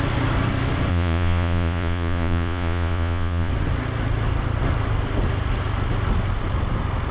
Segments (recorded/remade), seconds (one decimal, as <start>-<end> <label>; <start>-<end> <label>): 0.0-0.9 recorded; 0.9-3.5 remade; 3.5-7.1 recorded